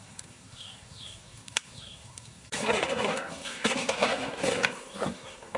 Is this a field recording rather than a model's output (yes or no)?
no